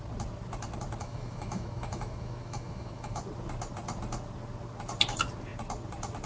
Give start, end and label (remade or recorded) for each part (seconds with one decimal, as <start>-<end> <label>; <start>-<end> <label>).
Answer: 0.0-1.0 recorded; 1.0-3.2 remade; 3.2-6.3 recorded